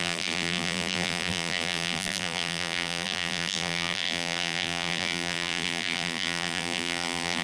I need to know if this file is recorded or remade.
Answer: remade